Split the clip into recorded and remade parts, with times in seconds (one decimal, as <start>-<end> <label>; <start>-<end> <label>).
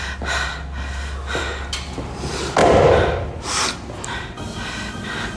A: 0.0-5.4 recorded